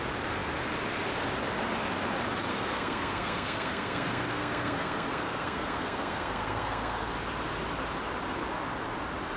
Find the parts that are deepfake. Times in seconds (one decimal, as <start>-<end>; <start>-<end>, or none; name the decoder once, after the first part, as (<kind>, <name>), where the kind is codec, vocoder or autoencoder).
2.5-7.1 (codec, SNAC)

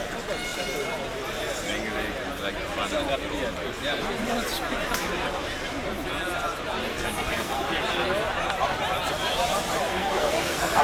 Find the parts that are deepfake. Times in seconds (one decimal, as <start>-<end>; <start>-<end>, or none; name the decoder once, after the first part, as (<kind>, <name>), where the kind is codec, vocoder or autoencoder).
6.9-7.6 (codec, SNAC); 9.9-10.8

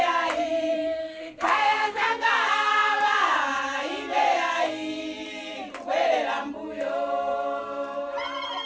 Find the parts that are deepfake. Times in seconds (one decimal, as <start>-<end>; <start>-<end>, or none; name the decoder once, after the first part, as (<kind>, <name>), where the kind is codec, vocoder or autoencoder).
1.0-2.3 (codec, SNAC)

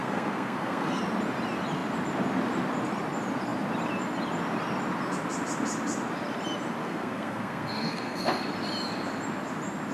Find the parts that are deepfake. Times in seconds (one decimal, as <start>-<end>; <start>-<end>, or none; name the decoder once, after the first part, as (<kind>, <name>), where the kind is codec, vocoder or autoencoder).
0.0-1.0 (codec, SNAC); 6.8-8.4

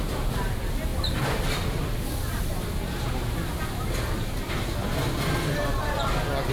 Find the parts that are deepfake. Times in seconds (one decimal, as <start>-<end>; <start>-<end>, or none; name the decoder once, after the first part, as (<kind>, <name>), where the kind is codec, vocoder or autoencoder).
none

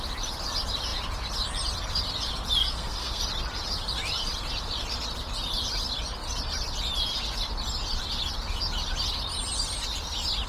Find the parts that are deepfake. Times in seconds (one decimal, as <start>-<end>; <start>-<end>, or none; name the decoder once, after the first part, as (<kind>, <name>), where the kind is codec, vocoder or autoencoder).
2.6-3.2 (codec, SNAC)

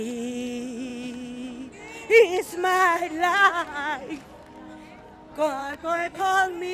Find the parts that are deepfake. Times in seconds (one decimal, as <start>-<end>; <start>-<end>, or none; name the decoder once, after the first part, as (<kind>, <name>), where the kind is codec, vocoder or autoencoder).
5.6-6.2 (codec, SNAC)